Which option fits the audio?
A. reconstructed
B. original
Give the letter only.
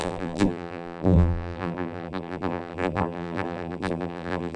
A